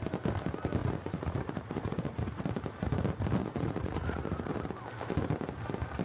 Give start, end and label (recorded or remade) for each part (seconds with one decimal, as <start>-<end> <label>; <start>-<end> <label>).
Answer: 0.0-0.8 recorded; 0.8-2.4 remade; 2.4-3.4 recorded; 3.4-4.5 remade; 4.5-6.0 recorded